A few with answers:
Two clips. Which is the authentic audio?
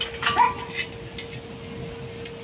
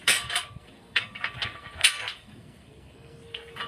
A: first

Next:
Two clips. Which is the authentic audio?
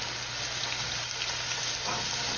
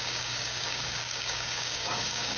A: first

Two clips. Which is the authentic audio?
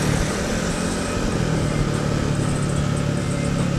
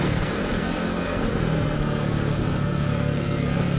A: first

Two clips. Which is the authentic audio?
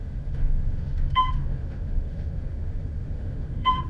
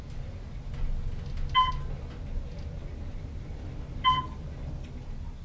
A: second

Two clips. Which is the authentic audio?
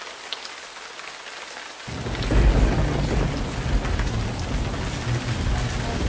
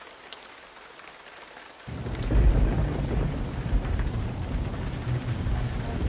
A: first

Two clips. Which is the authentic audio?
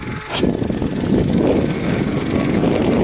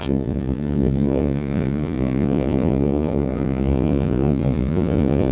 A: first